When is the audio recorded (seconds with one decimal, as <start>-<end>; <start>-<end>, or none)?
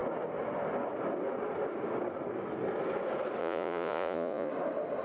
0.0-3.4; 4.5-5.0